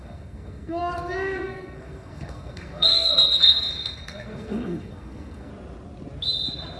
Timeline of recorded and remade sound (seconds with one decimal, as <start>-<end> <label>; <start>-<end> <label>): 0.0-5.5 remade; 5.5-6.8 recorded